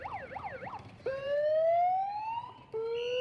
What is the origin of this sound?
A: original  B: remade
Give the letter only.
A